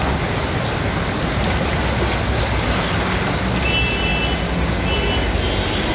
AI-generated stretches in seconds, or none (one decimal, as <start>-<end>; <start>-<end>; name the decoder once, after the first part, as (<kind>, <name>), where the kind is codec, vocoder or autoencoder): none